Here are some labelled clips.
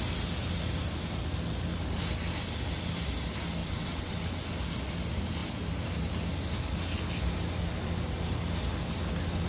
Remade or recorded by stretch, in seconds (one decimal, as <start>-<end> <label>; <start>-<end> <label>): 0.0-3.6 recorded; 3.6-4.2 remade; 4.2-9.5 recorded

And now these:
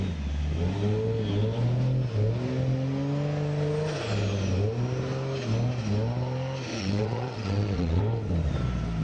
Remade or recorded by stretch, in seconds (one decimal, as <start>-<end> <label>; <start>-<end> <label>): 0.0-6.7 recorded; 6.7-8.0 remade; 8.0-9.0 recorded

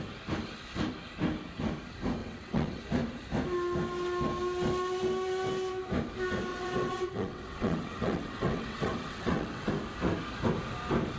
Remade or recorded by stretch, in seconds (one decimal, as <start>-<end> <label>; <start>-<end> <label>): 0.0-2.2 recorded; 2.2-2.8 remade; 2.8-6.5 recorded; 6.5-9.7 remade; 9.7-11.2 recorded

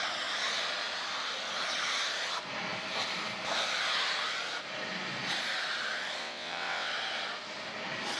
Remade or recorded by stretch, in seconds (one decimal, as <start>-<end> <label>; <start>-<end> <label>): 0.0-6.2 recorded; 6.2-6.9 remade; 6.9-8.2 recorded

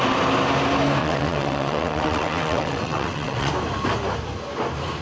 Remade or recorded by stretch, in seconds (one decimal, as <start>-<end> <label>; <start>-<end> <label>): 0.0-1.0 recorded; 1.0-3.5 remade; 3.5-5.0 recorded